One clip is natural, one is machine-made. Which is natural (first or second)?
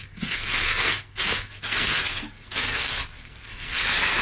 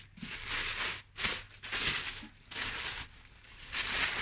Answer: second